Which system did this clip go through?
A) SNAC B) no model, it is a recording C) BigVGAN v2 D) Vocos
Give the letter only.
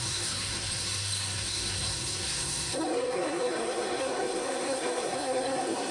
A